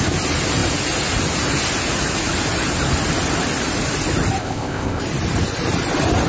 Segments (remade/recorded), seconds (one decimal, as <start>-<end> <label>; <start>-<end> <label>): 0.0-4.4 recorded; 4.4-5.0 remade; 5.0-6.3 recorded